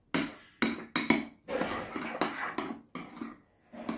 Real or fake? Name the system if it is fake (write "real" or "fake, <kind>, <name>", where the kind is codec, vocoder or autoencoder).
real